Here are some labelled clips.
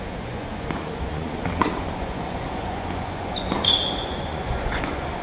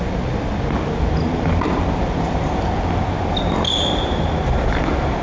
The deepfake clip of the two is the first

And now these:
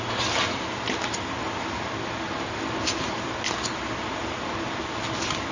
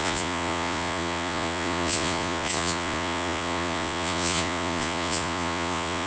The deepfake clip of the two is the second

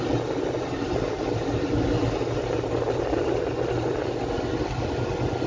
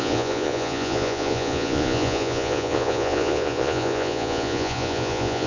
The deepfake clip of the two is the second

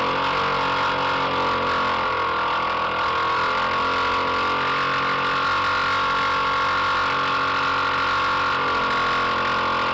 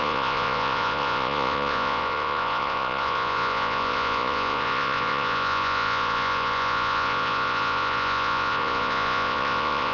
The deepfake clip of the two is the second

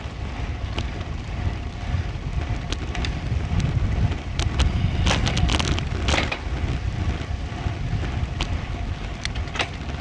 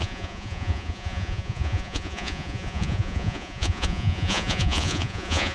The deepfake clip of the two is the second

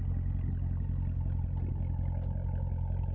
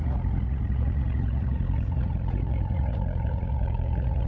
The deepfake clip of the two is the second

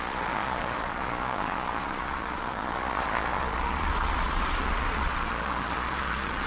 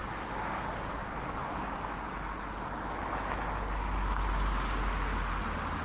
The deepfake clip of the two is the first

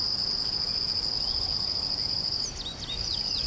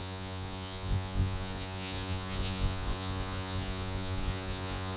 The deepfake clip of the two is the second